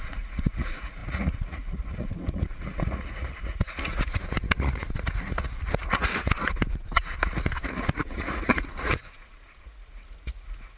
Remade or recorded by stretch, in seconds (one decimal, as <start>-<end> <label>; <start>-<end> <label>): 0.0-10.8 remade